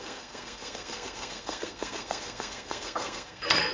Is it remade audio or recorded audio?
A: remade